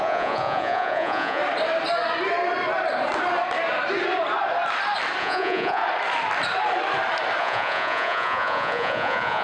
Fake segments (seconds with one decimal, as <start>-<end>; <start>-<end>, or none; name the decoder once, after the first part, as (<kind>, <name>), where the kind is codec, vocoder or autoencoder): 0.0-1.4 (vocoder, Vocos); 5.2-5.8; 7.4-9.4